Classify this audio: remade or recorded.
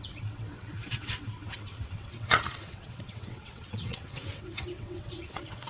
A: remade